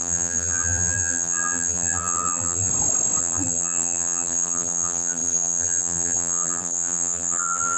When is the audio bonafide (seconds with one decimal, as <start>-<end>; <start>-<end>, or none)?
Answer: 2.7-3.2

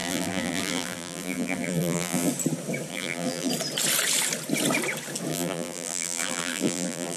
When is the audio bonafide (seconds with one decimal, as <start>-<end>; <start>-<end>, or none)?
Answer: 2.3-2.9; 3.5-5.3

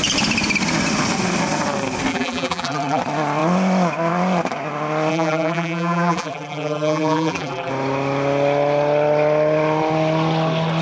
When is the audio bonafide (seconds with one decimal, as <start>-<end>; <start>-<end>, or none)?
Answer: 0.0-2.1; 3.0-5.1; 7.7-10.8